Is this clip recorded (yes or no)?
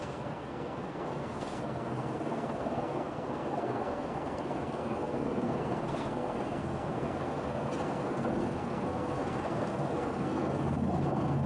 no